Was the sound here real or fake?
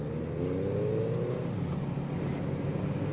real